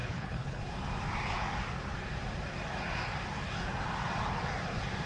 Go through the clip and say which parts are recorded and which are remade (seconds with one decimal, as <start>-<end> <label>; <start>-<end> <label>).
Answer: 0.0-0.6 remade; 0.6-5.1 recorded